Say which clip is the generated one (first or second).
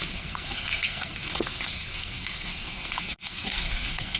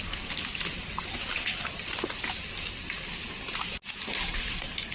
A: first